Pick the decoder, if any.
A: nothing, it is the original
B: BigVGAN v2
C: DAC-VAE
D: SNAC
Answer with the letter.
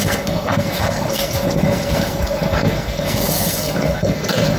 D